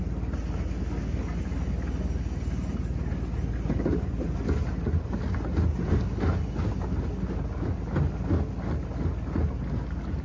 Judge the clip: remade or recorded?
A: recorded